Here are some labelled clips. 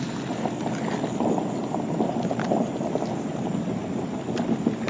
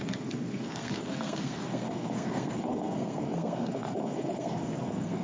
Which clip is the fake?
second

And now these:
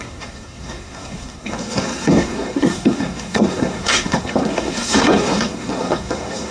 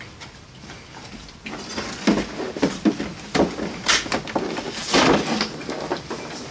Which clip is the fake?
first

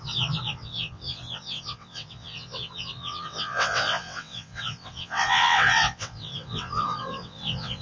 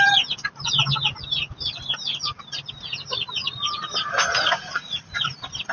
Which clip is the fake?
first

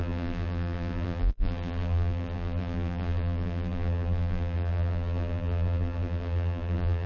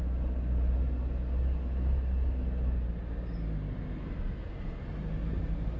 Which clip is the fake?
first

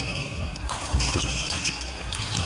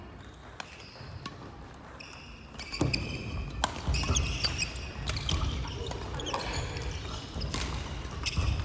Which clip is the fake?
first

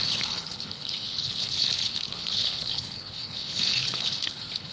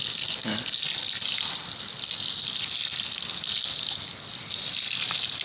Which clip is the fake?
first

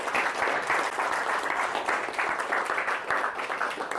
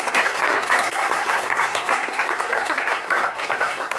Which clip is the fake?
second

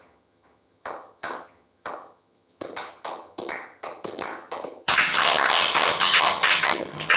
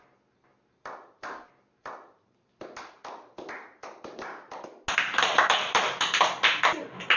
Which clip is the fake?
first